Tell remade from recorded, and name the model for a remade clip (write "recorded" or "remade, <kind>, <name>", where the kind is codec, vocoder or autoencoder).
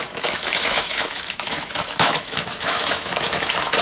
remade, autoencoder, DAC-VAE